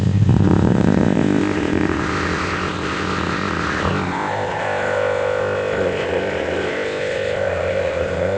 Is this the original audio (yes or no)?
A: no